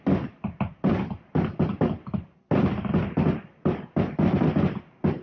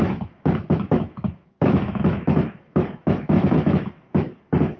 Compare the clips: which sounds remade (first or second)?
second